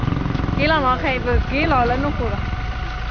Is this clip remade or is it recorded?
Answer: recorded